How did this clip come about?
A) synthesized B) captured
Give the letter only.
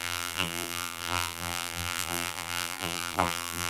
A